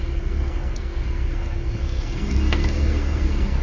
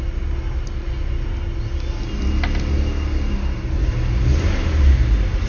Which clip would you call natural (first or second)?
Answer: second